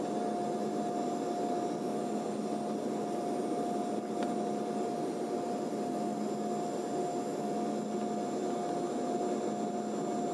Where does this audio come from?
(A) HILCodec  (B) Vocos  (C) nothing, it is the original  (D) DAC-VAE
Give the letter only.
C